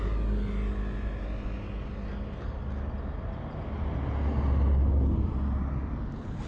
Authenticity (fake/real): real